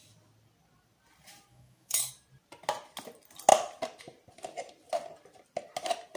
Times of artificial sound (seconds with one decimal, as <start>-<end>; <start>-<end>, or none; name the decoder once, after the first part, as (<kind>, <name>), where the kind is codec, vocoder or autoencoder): 1.5-2.1 (autoencoder, DAC-VAE)